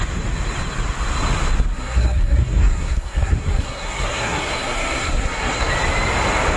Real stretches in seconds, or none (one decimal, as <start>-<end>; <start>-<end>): 0.0-1.7; 5.7-6.6